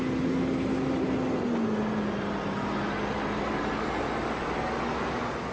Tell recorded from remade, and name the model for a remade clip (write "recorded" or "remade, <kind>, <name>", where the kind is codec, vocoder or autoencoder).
recorded